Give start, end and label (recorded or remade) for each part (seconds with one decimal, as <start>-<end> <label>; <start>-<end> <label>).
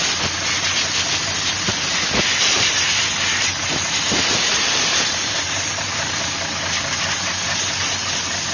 0.0-3.7 recorded; 3.7-6.4 remade; 6.4-8.5 recorded